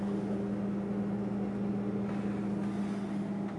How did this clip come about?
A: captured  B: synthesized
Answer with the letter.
A